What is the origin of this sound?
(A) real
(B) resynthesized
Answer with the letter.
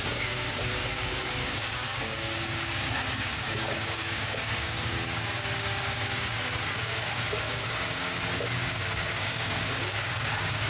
B